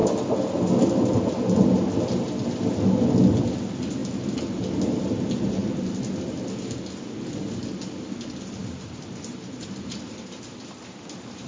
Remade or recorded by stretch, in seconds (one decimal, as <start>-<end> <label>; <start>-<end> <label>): 0.0-8.6 recorded; 8.6-11.5 remade

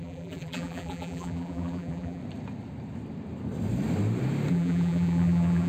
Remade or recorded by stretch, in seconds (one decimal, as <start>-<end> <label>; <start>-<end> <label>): 0.0-2.2 remade; 2.2-4.5 recorded; 4.5-5.7 remade